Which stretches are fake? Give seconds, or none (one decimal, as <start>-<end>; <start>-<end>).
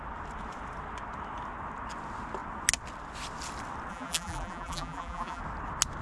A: 3.9-5.4